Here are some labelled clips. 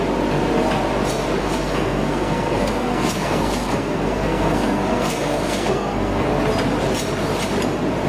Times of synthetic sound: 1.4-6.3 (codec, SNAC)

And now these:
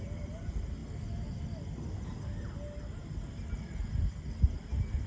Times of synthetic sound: none

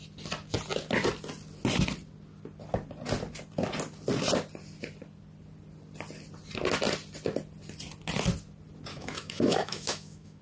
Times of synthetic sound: 8.9-10.4 (autoencoder, DAC-VAE)